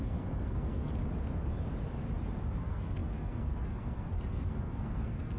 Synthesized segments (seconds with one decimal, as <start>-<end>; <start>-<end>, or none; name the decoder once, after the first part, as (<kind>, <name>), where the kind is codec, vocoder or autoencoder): 0.0-0.9 (codec, SNAC); 2.5-5.4